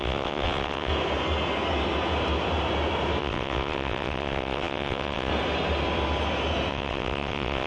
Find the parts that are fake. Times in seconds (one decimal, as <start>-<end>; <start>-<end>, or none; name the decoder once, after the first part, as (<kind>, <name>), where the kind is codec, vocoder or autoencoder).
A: 0.0-0.9 (vocoder, WaveNeXt); 3.2-5.3; 6.7-7.7